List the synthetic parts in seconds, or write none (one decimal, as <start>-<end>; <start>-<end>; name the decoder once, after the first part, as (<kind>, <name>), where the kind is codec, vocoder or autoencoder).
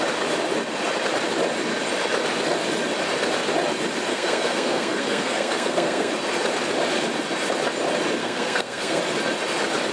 4.1-6.1 (codec, SNAC); 8.2-9.0